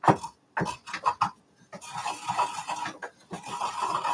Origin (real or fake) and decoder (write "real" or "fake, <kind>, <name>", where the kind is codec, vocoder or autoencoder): real